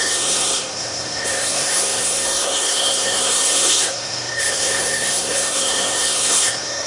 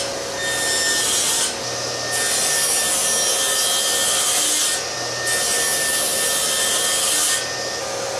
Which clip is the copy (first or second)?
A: first